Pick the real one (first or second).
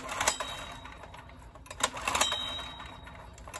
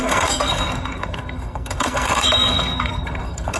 first